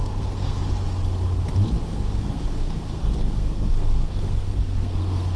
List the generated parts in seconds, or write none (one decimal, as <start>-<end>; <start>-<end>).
0.0-0.6; 1.9-5.4